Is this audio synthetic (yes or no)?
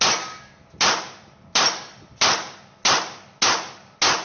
no